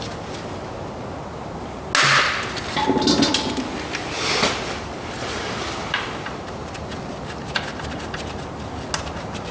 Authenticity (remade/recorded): recorded